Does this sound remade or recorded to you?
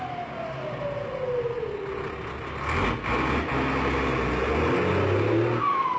recorded